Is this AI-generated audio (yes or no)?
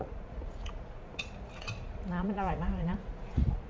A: yes